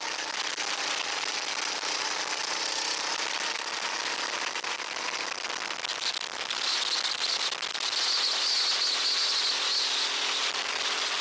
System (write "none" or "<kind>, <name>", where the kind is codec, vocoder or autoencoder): none